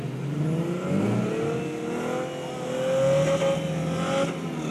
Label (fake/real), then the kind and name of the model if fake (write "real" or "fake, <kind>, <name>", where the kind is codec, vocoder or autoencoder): real